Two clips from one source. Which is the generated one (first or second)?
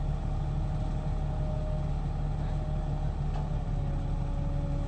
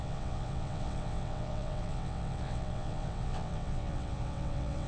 second